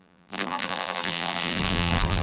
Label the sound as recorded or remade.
remade